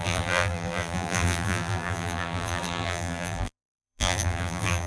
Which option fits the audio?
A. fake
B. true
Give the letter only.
A